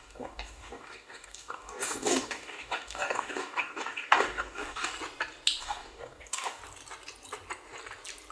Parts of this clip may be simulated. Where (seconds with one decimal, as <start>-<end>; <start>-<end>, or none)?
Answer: 0.0-4.9; 5.6-6.6